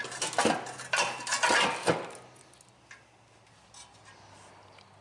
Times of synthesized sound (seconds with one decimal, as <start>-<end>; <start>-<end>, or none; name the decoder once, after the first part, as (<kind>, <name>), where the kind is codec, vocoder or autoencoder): none